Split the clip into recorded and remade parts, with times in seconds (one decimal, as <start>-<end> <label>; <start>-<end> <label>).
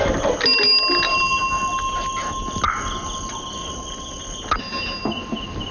0.0-3.6 recorded; 3.6-4.2 remade; 4.2-5.7 recorded